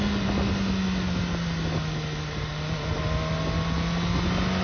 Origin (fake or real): real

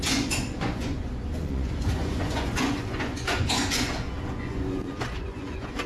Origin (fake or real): fake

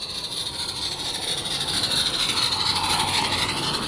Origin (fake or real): real